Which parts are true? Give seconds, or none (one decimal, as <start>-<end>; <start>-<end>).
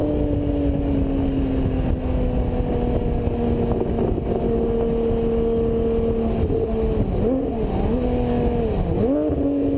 0.0-9.8